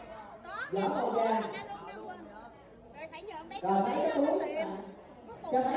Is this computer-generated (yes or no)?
yes